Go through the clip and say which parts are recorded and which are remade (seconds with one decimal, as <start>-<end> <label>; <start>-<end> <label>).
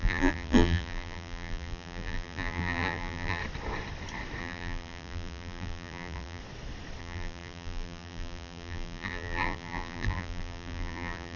0.0-3.4 remade; 3.4-4.4 recorded; 4.4-6.4 remade; 6.4-7.0 recorded; 7.0-11.4 remade